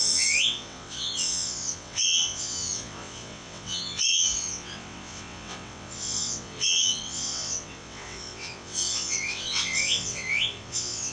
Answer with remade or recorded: remade